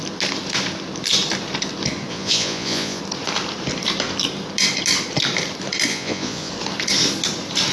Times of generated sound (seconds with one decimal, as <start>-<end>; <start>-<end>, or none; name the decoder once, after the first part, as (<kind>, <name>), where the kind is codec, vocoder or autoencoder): 2.1-3.0 (vocoder, Vocos); 5.9-6.5